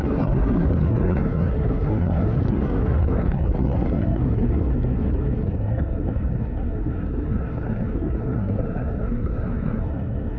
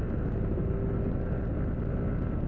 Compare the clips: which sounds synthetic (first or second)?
first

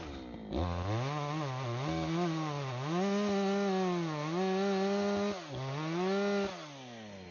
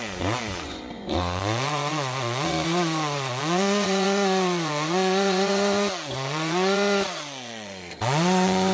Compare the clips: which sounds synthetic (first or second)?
second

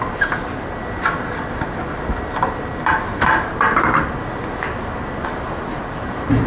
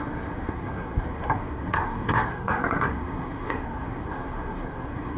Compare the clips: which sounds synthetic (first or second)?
second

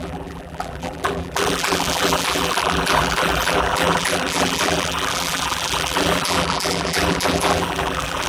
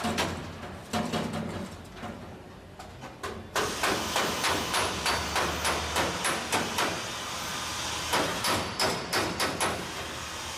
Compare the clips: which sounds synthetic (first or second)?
first